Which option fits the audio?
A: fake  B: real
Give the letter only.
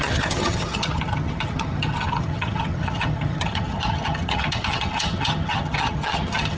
A